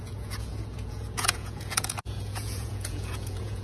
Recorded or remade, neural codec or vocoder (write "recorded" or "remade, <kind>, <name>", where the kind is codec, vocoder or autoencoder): remade, vocoder, Vocos